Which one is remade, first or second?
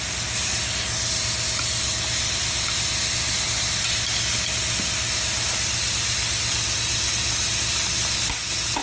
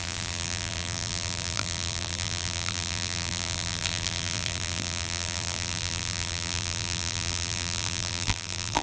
second